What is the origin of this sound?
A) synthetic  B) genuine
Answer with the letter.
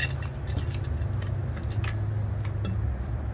B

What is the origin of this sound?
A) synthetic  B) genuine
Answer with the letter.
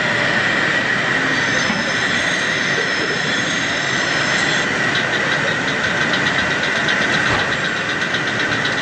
B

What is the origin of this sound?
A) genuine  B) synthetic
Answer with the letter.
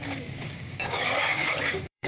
B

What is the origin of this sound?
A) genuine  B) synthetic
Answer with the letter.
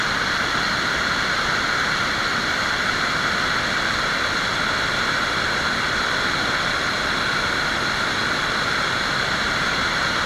A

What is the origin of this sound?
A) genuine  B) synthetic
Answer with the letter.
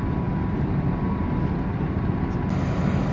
A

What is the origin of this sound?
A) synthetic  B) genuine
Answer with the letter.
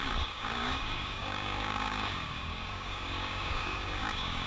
A